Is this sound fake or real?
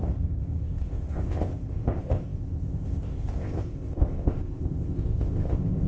fake